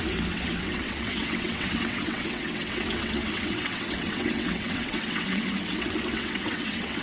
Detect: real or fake fake